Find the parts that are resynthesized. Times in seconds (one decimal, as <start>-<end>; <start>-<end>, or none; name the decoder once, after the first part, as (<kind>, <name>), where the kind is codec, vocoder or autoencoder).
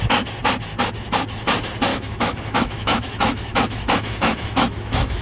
1.9-5.2 (autoencoder, DAC-VAE)